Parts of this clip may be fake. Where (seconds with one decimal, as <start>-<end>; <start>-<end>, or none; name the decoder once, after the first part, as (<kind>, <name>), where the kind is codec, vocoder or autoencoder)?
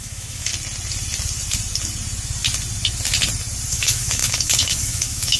0.0-0.5 (autoencoder, DAC-VAE); 3.7-5.4